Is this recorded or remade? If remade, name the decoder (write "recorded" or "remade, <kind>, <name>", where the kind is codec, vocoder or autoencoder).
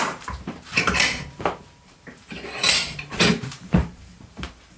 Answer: remade, vocoder, BigVGAN v2